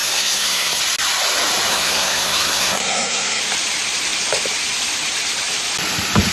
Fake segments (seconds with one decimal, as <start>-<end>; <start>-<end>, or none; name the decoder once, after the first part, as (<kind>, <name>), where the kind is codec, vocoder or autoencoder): 0.0-0.8 (codec, SNAC); 1.7-3.4